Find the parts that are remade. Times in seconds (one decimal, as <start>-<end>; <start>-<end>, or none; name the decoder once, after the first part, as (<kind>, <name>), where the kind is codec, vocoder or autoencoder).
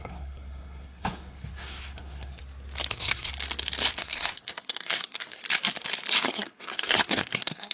0.0-2.4 (codec, SNAC); 2.9-3.3; 3.9-5.4; 6.2-7.7